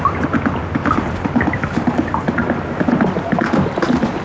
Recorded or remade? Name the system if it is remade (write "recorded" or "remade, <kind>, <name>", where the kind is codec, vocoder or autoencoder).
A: recorded